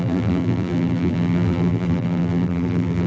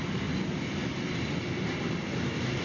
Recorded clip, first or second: second